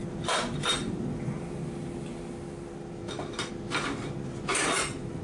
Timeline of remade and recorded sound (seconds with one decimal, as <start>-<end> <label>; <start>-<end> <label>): 0.0-1.4 remade; 1.4-4.5 recorded; 4.5-5.2 remade